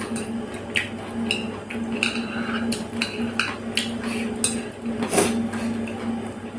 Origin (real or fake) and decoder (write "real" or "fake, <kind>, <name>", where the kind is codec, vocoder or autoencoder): real